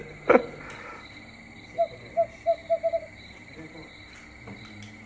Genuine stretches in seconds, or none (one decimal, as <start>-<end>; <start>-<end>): 0.0-5.1